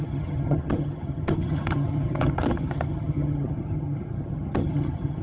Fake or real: fake